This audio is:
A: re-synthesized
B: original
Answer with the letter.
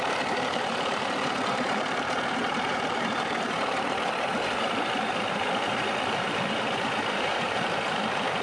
A